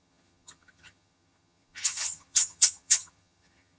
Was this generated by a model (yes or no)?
yes